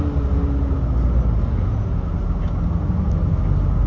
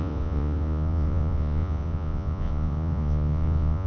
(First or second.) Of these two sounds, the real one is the first